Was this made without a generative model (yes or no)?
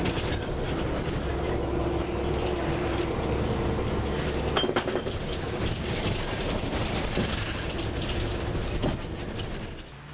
yes